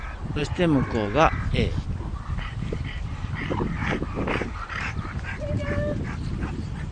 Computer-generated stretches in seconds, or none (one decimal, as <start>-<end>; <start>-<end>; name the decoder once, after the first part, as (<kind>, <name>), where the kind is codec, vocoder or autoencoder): 3.8-4.9 (vocoder, BigVGAN v2)